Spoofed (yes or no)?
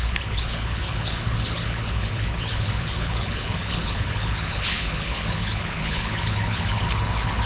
yes